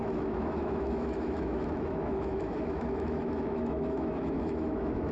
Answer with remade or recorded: remade